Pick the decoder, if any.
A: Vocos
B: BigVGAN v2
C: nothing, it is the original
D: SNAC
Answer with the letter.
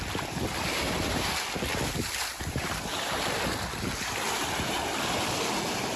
C